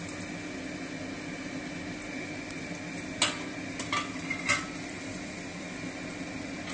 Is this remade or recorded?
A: recorded